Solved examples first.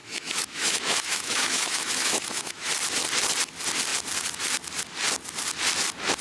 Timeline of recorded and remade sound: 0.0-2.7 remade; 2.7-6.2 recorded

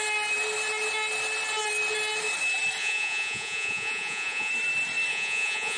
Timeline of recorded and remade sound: 0.0-2.8 recorded; 2.8-4.5 remade; 4.5-5.1 recorded; 5.1-5.8 remade

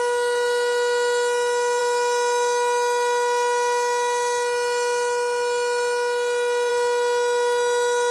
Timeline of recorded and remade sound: 0.0-8.1 recorded

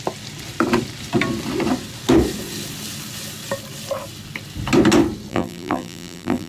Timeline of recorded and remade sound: 0.0-5.3 recorded; 5.3-6.5 remade

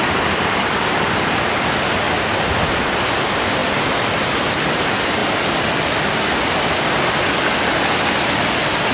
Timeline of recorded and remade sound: 0.0-8.9 recorded